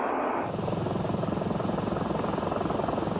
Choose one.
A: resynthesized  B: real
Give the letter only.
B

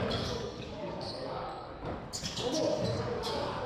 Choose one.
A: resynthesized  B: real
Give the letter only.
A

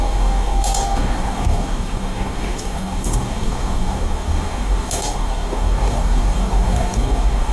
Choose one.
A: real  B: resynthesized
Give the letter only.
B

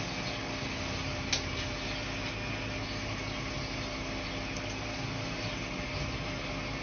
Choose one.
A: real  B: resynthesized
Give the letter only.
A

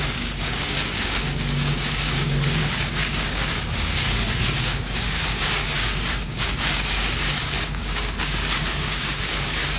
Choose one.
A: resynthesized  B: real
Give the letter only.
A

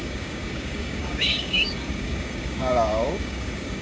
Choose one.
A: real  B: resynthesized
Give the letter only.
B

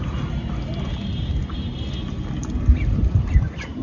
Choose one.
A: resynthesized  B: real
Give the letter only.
B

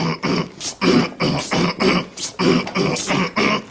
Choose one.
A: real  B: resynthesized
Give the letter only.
A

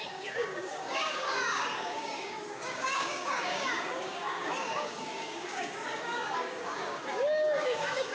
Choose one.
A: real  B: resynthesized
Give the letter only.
B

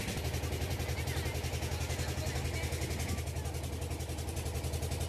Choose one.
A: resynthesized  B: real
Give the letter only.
B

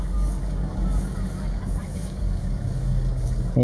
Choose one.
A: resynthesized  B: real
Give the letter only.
A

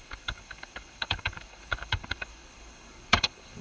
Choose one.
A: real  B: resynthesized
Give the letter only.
B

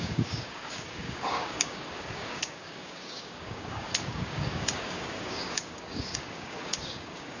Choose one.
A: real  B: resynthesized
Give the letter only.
B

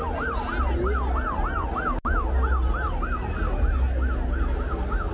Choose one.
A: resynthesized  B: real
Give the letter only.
B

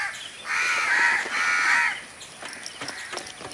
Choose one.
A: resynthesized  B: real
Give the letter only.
B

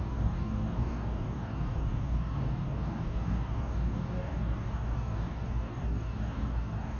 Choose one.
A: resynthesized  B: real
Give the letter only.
A